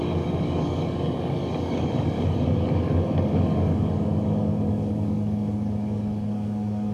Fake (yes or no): yes